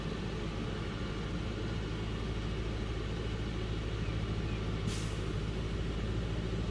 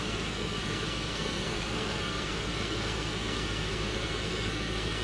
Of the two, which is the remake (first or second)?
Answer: second